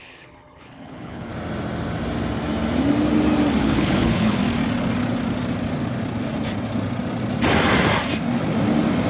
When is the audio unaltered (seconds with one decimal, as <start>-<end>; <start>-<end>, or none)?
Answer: 1.3-3.6; 4.4-9.1